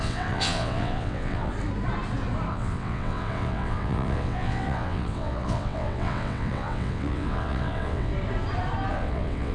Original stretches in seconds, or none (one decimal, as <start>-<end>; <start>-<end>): 1.5-2.5; 8.1-8.9